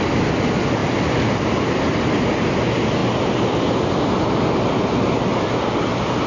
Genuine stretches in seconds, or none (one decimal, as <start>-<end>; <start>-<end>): 0.0-6.3